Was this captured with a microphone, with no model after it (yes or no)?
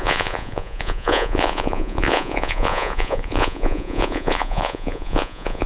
no